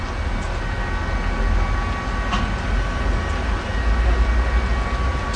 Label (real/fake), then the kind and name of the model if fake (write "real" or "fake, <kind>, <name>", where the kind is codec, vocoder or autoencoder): real